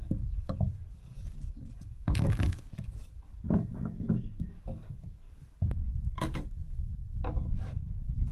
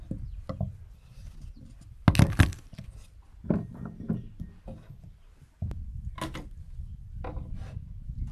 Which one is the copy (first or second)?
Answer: first